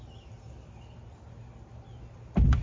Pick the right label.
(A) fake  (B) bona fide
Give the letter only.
B